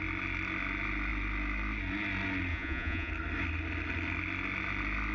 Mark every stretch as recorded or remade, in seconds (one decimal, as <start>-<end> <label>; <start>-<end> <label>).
0.0-2.5 recorded; 2.5-3.1 remade; 3.1-5.1 recorded